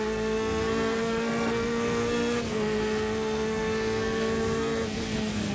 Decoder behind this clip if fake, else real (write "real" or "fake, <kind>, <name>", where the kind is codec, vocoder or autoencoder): fake, codec, SNAC